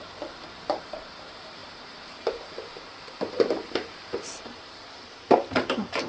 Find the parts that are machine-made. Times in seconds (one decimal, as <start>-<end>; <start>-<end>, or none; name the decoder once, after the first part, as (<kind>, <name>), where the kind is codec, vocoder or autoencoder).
0.0-6.1 (vocoder, BigVGAN v2)